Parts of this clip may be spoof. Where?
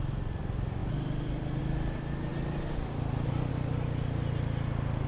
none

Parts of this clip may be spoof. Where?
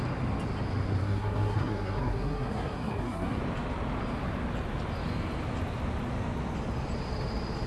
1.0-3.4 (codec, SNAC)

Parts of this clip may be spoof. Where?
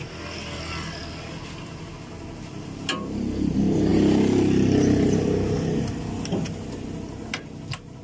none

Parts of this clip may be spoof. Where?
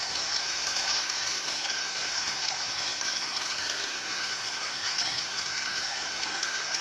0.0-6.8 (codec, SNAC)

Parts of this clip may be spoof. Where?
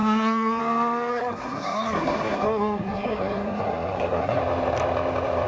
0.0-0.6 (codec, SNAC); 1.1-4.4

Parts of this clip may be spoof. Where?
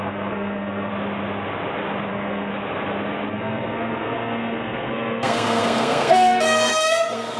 0.0-0.9 (codec, SNAC); 2.1-2.5; 3.3-7.4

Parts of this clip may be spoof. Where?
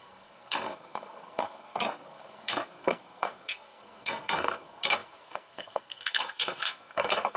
0.0-7.4 (codec, SNAC)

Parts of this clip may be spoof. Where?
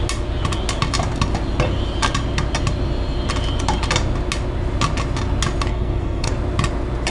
5.7-6.3 (codec, SNAC)